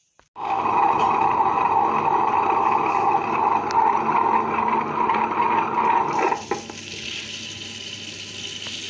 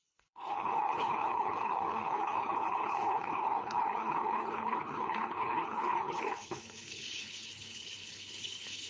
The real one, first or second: first